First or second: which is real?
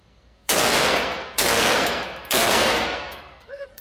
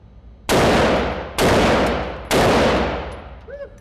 second